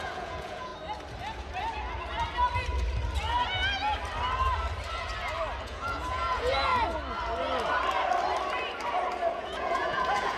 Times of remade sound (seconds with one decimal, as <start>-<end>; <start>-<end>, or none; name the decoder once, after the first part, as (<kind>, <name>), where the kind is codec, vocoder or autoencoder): 0.0-0.7 (vocoder, Vocos); 5.6-6.7; 9.3-10.4